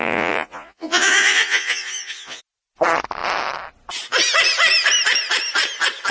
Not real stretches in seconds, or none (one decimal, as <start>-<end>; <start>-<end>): 0.0-2.4